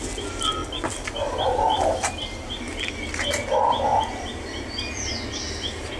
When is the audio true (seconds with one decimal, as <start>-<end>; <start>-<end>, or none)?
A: 0.0-6.0